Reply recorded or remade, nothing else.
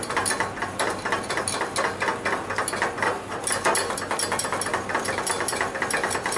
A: recorded